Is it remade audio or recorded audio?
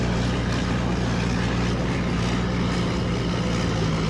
recorded